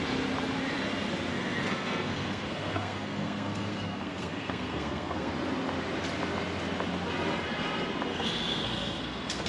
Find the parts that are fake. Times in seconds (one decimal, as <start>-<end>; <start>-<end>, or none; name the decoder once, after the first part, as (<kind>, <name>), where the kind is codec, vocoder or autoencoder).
1.3-5.3 (codec, SNAC); 8.1-9.5